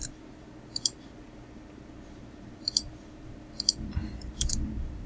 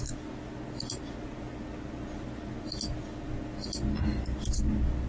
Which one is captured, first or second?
second